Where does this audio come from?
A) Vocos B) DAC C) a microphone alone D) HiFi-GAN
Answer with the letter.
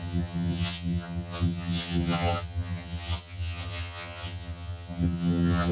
D